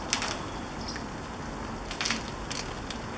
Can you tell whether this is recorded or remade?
recorded